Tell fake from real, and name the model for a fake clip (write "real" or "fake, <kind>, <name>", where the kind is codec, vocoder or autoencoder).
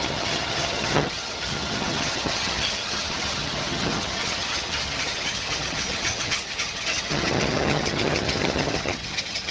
fake, vocoder, HiFi-GAN